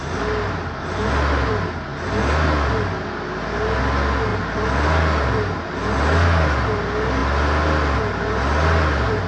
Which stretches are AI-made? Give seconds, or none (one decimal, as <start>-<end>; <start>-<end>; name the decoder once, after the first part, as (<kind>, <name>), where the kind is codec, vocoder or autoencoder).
none